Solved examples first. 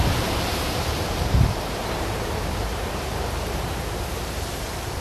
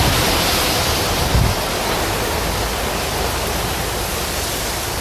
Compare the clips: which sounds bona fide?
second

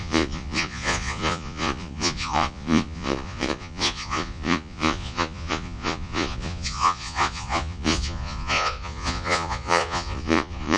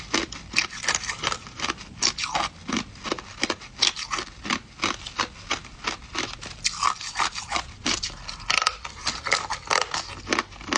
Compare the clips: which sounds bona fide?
second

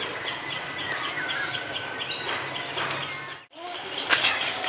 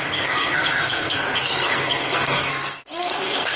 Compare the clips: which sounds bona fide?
first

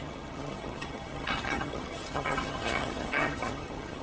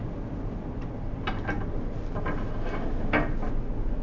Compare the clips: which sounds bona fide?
second